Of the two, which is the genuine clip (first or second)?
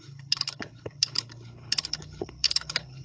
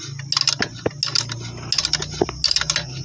second